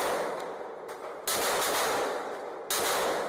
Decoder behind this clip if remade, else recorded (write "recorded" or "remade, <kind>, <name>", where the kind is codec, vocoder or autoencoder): recorded